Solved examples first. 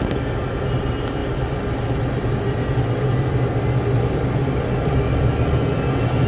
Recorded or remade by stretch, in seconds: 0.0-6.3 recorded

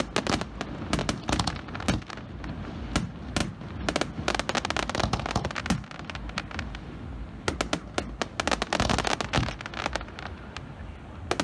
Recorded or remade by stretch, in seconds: 0.0-11.4 recorded

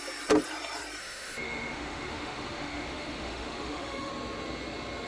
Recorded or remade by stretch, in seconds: 0.0-1.0 recorded; 1.0-4.1 remade; 4.1-5.1 recorded

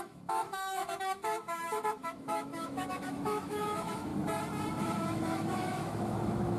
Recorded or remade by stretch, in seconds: 0.0-4.1 remade; 4.1-4.8 recorded; 4.8-6.6 remade

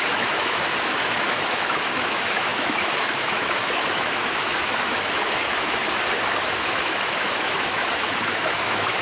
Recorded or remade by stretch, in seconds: 0.0-5.8 remade; 5.8-6.7 recorded; 6.7-9.0 remade

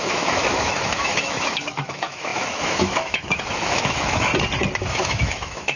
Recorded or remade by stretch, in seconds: 0.0-4.3 remade; 4.3-4.9 recorded; 4.9-5.8 remade

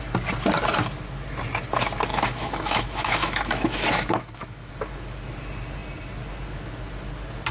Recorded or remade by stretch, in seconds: 0.0-2.1 recorded; 2.1-4.7 remade; 4.7-7.5 recorded